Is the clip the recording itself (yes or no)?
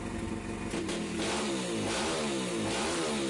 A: yes